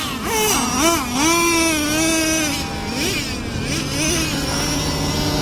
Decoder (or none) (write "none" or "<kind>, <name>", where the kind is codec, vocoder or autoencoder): none